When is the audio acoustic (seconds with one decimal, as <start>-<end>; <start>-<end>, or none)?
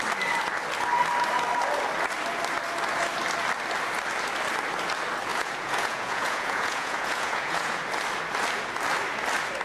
0.0-5.3; 7.8-9.6